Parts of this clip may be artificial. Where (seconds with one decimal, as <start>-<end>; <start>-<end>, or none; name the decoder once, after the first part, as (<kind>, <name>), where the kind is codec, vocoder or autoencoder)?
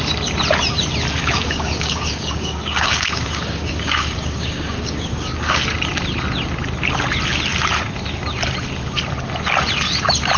1.2-5.6 (codec, DAC)